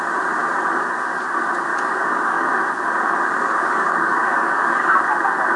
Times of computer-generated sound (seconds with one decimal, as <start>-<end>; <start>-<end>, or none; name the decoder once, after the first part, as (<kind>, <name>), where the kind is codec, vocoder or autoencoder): 1.7-2.5 (codec, DAC); 3.4-4.9